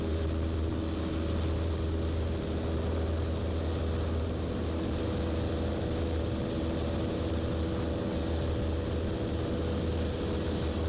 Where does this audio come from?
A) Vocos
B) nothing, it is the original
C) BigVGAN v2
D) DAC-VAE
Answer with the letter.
B